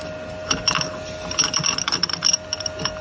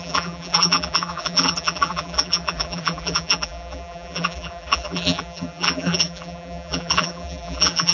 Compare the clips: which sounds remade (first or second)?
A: second